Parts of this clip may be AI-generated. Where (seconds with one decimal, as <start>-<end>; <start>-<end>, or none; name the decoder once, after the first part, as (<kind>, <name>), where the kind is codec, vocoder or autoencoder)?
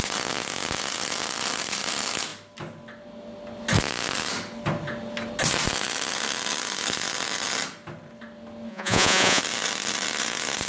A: 8.7-9.4 (vocoder, Vocos)